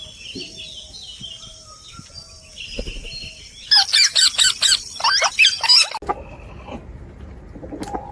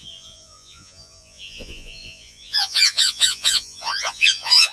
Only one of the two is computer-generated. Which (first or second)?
second